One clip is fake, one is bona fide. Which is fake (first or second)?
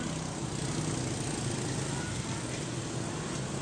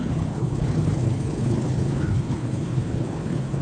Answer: second